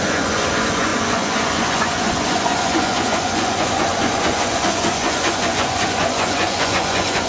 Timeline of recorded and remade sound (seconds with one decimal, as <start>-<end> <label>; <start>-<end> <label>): 0.0-7.3 remade